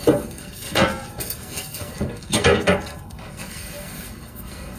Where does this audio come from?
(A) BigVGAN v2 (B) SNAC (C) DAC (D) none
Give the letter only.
B